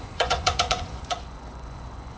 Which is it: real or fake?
fake